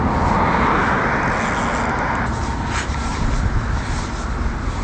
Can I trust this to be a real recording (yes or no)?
yes